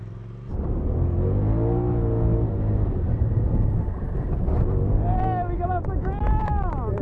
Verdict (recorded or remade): recorded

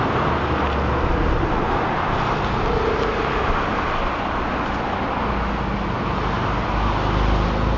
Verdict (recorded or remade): recorded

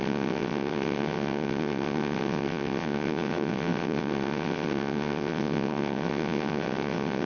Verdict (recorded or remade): remade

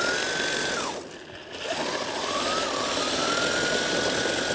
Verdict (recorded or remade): recorded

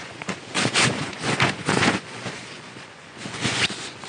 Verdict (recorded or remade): remade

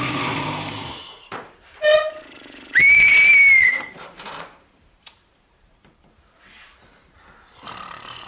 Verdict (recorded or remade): remade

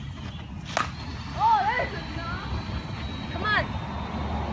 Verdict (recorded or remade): recorded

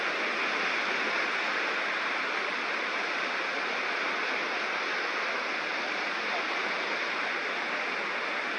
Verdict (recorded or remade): recorded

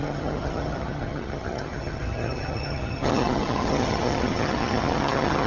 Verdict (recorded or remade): remade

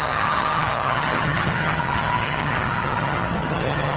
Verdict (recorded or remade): remade